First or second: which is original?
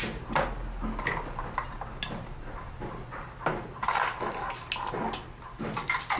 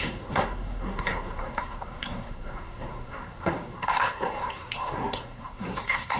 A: first